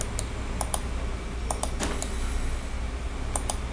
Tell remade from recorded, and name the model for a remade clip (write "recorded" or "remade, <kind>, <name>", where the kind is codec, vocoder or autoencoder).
recorded